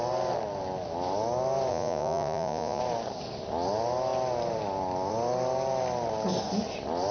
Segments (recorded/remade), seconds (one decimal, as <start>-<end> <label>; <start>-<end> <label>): 0.0-1.7 recorded; 1.7-2.8 remade; 2.8-7.1 recorded